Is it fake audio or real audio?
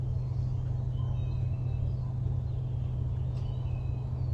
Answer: real